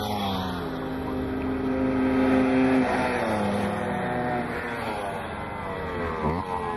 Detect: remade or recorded recorded